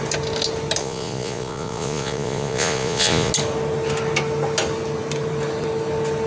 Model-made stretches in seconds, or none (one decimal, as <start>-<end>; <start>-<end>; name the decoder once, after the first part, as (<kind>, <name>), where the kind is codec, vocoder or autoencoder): 0.8-3.3 (vocoder, Vocos)